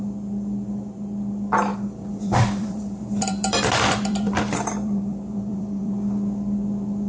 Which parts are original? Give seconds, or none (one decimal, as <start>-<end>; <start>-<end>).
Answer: 0.0-1.7; 5.9-7.1